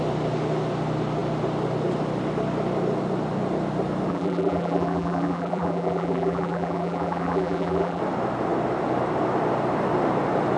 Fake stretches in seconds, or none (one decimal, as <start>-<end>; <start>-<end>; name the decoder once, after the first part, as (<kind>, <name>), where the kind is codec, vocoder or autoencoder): 4.1-8.0 (vocoder, BigVGAN v2)